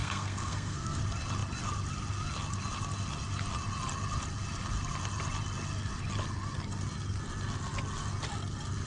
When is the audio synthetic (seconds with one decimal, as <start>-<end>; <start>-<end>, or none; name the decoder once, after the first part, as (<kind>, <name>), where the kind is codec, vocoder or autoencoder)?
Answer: 0.0-1.0 (codec, SNAC)